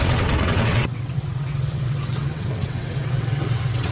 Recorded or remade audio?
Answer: remade